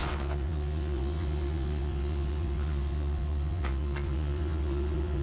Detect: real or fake fake